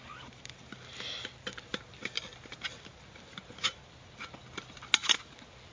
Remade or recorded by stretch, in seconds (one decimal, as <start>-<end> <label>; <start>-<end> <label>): 0.0-5.7 recorded